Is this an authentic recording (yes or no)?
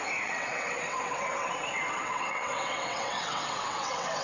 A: no